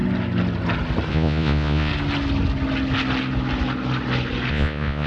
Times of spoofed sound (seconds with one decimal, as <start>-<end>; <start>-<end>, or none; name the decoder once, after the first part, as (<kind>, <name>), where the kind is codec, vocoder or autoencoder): 1.1-1.9 (vocoder, Vocos); 4.5-5.1